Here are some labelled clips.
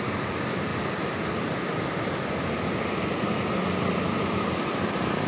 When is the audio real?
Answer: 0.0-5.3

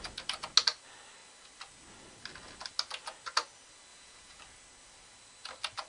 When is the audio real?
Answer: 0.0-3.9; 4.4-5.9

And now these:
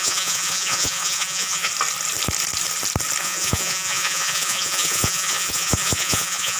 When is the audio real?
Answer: 1.7-3.2